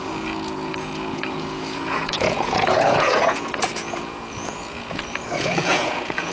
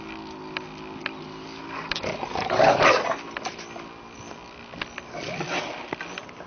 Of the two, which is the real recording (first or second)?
second